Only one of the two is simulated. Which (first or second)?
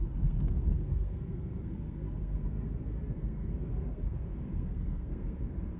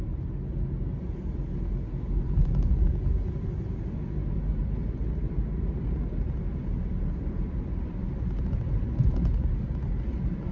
first